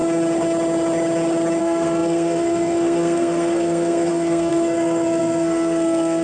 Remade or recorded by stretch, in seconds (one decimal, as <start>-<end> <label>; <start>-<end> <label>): 0.0-1.6 recorded; 1.6-6.2 remade